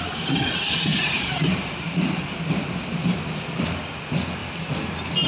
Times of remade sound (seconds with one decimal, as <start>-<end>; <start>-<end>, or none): 0.9-2.2